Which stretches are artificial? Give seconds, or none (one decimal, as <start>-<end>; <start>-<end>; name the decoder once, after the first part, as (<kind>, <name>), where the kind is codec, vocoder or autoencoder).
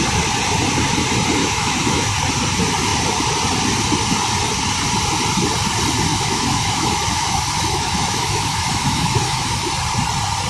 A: 1.4-2.1 (autoencoder, DAC-VAE); 6.1-9.7